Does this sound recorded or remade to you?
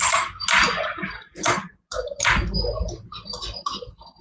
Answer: recorded